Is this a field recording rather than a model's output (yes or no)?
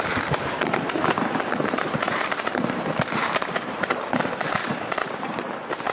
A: no